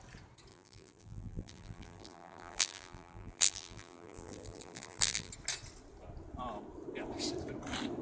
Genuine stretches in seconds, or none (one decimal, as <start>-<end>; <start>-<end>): 0.0-0.5; 5.3-8.0

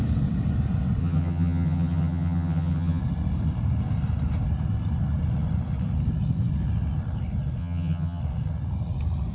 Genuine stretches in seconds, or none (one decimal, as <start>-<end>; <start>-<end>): 0.0-1.0; 3.0-7.6; 8.2-9.3

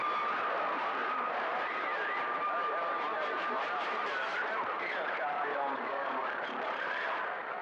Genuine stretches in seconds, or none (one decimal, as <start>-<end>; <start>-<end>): 0.0-1.0; 5.6-6.2

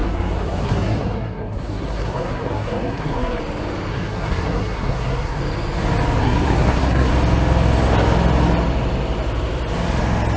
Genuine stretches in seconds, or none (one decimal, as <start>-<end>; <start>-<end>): 3.4-3.9; 5.4-6.2; 7.1-10.4

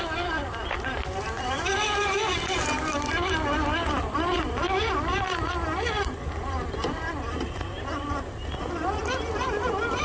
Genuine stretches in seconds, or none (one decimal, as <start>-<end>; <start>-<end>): 0.0-10.0

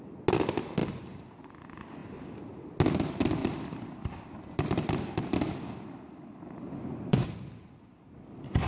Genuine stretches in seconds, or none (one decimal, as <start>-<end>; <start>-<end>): 0.0-0.8; 1.3-3.4; 5.1-8.7

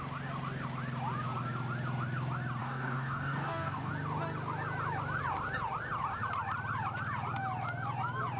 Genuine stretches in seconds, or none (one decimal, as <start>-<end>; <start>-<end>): 0.0-2.6; 3.9-8.4

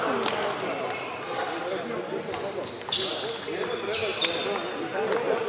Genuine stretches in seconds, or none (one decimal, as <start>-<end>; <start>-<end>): 0.0-5.5